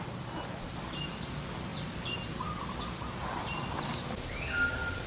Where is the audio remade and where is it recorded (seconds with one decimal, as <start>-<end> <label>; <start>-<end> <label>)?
0.0-5.1 recorded